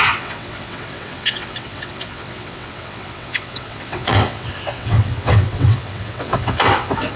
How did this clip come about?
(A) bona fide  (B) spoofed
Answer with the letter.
B